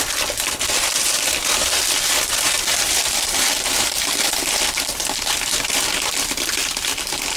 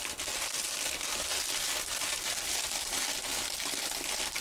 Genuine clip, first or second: second